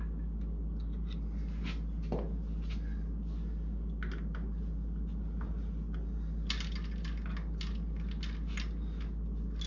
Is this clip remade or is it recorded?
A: recorded